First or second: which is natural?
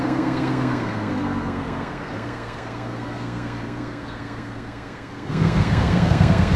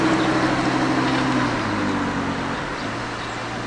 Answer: second